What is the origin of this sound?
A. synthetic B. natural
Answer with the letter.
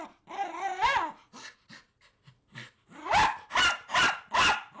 B